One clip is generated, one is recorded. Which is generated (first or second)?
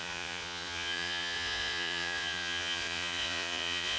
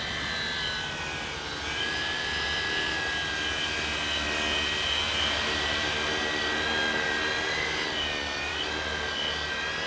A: first